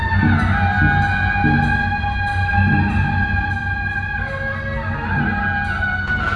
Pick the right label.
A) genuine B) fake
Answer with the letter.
A